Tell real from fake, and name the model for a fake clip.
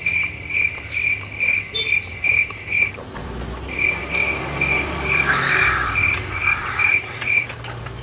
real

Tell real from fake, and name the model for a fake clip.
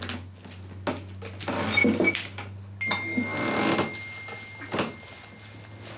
real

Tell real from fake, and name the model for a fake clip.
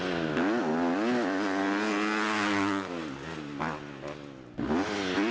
real